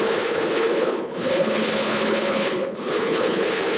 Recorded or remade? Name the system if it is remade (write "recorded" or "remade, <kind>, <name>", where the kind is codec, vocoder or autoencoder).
remade, codec, HILCodec